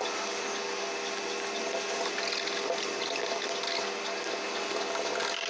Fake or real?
real